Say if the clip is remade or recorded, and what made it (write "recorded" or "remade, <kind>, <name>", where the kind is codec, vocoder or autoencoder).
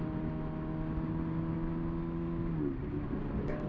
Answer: recorded